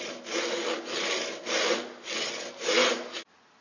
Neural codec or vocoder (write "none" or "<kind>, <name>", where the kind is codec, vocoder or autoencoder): none